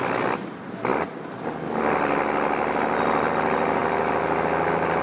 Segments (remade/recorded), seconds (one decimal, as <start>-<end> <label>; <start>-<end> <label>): 0.0-5.0 recorded